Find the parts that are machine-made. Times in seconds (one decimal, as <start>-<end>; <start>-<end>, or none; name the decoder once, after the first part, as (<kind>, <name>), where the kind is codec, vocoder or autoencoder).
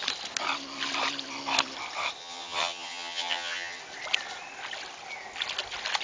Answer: 2.2-3.8 (vocoder, HiFi-GAN)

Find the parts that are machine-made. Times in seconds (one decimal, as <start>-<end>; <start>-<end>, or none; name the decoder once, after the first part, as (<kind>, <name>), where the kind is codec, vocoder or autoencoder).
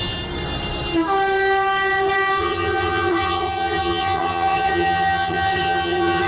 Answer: 2.4-6.3 (vocoder, HiFi-GAN)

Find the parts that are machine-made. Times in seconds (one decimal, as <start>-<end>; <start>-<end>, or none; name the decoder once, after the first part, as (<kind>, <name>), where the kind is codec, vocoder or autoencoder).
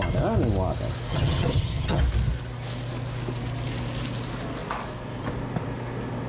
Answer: 1.1-2.0 (vocoder, HiFi-GAN)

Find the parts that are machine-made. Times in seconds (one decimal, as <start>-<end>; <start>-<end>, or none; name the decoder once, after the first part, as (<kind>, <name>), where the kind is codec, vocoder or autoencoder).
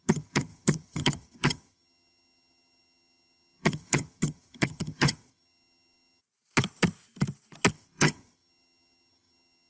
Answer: 0.0-6.2 (vocoder, HiFi-GAN); 7.7-9.7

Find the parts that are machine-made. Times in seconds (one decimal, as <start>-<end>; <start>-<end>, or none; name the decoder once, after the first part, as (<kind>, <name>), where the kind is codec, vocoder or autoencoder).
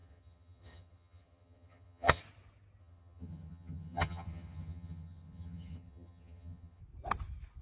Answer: 0.0-2.2 (vocoder, HiFi-GAN); 2.8-6.8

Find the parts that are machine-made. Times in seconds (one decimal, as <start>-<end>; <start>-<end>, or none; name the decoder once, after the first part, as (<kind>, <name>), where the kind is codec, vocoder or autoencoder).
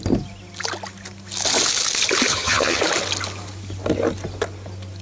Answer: 2.3-2.8 (vocoder, HiFi-GAN)